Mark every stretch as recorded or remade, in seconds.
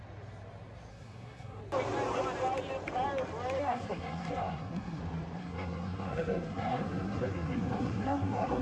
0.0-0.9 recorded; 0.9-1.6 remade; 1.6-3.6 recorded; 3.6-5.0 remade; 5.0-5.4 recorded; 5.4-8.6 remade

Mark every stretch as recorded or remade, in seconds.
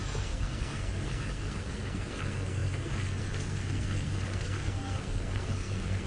0.0-6.1 remade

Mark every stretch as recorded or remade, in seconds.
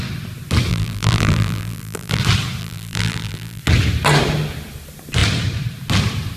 0.0-0.7 recorded; 0.7-2.2 remade; 2.2-2.6 recorded; 2.6-3.6 remade; 3.6-6.4 recorded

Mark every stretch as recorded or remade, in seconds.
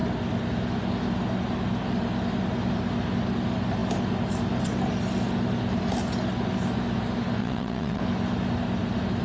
0.0-7.4 recorded; 7.4-8.0 remade; 8.0-9.2 recorded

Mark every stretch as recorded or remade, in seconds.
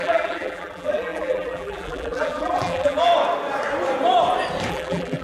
0.0-3.1 remade; 3.1-4.7 recorded; 4.7-5.2 remade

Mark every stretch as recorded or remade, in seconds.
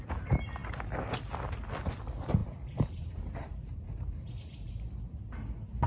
0.0-2.4 recorded; 2.4-4.7 remade; 4.7-5.9 recorded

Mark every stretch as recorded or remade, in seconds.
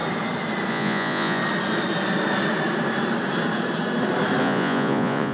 0.0-0.7 recorded; 0.7-1.4 remade; 1.4-4.4 recorded; 4.4-5.3 remade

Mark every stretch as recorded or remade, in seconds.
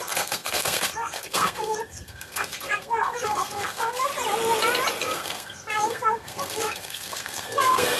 0.0-4.1 remade; 4.1-5.0 recorded; 5.0-8.0 remade